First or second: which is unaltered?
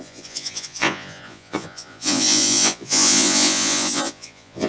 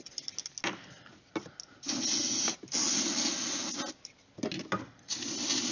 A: second